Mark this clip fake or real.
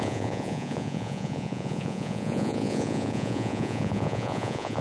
fake